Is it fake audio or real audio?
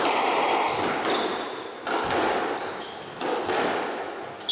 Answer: real